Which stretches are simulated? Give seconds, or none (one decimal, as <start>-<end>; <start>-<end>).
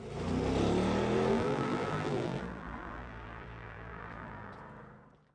1.3-4.5